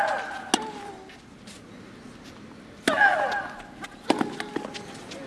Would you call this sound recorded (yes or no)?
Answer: yes